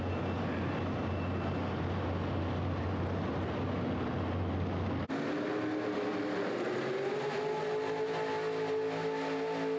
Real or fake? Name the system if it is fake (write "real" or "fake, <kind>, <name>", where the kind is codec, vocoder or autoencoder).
real